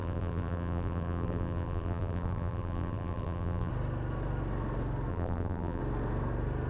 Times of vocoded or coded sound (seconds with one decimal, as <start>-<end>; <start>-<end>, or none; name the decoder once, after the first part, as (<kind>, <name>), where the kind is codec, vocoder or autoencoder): 0.0-3.7 (vocoder, BigVGAN v2); 5.1-5.8